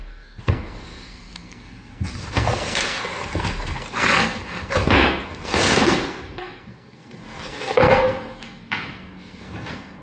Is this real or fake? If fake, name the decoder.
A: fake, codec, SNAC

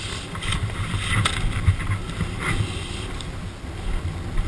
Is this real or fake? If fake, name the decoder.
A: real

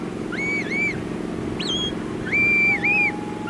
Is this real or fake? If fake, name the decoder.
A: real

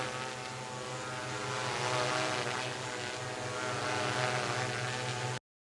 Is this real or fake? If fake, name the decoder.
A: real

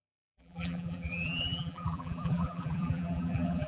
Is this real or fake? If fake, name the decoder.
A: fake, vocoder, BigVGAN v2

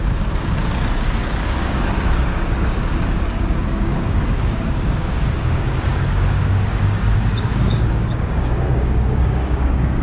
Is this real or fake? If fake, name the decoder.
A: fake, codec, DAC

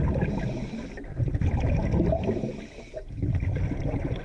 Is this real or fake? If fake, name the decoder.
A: real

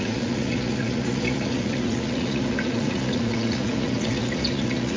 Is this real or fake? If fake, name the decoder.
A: fake, vocoder, Vocos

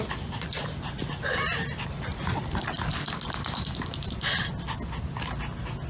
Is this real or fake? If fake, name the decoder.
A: real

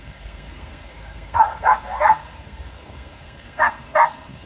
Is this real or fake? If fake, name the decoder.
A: fake, codec, SNAC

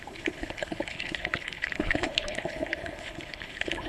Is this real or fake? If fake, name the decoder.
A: fake, codec, HILCodec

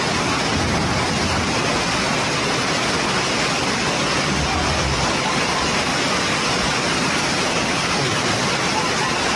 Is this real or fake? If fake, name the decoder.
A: real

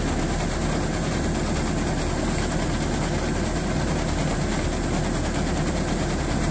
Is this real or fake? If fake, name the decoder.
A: real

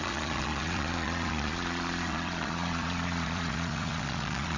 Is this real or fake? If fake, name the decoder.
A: fake, vocoder, Vocos